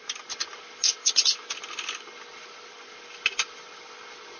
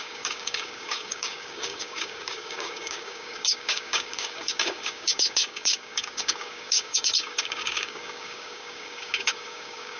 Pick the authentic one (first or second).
first